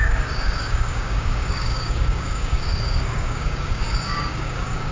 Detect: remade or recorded remade